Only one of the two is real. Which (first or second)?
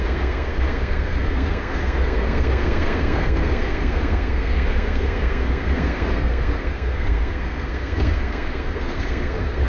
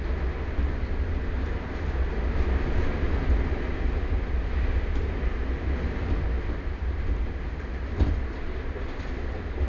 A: second